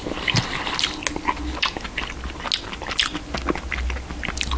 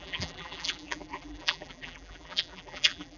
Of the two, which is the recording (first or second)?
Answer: first